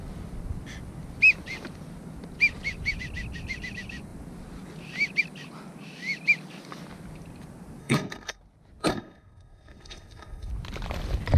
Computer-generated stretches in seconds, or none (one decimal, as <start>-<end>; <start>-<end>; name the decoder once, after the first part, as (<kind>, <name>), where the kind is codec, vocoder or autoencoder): 7.8-8.4 (codec, SNAC); 8.8-10.5